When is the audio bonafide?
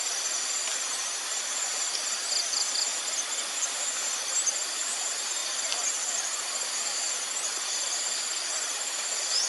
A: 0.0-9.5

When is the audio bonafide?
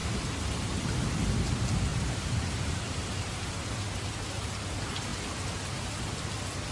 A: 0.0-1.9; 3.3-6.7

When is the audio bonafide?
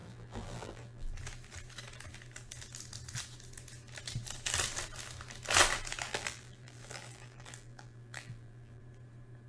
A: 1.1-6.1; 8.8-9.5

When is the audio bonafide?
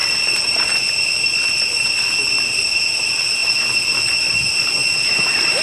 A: 0.0-3.4; 4.1-5.6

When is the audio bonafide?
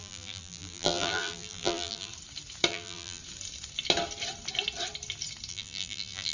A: 2.1-2.7; 3.2-5.5